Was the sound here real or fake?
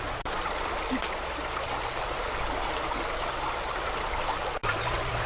real